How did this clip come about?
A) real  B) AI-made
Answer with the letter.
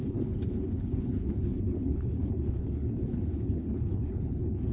B